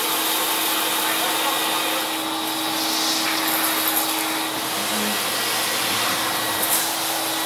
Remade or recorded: recorded